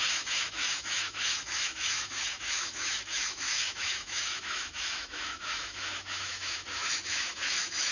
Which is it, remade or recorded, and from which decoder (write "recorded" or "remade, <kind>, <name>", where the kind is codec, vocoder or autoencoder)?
remade, autoencoder, DAC-VAE